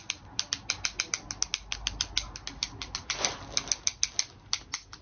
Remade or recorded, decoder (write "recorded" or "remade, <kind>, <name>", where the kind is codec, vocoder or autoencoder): recorded